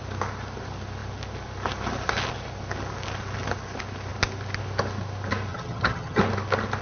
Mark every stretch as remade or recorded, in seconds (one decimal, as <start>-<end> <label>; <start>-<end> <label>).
0.0-5.5 recorded; 5.5-6.2 remade; 6.2-6.8 recorded